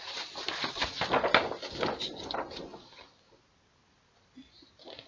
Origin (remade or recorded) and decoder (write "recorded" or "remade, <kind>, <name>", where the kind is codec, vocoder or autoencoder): recorded